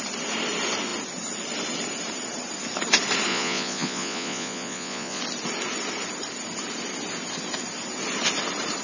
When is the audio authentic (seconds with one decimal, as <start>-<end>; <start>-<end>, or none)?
0.0-3.3; 5.2-8.8